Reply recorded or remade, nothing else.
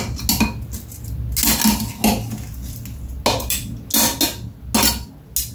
recorded